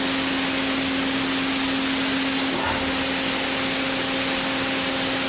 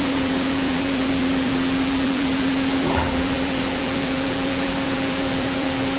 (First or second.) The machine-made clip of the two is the second